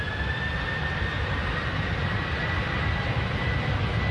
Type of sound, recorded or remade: remade